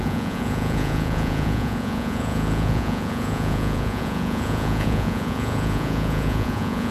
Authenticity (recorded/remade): remade